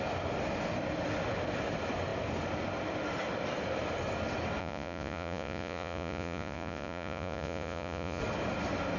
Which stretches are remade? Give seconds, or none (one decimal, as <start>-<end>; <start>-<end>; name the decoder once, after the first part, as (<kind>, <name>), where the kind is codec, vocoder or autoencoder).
4.6-8.2 (vocoder, Vocos)